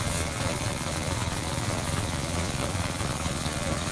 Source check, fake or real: fake